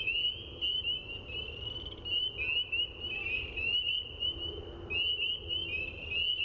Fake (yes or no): no